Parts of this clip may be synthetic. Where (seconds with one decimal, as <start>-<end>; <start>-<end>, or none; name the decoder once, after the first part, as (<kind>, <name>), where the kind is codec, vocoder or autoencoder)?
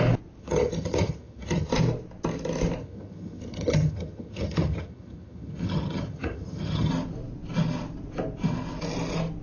0.4-1.7 (vocoder, HiFi-GAN); 2.8-6.9